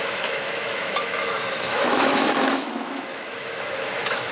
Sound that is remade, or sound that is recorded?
remade